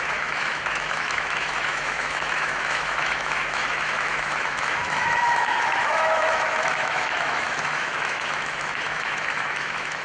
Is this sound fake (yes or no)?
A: yes